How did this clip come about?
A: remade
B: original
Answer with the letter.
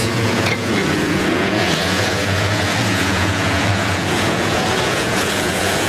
A